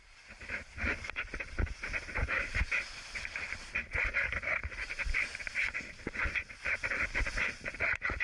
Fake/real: fake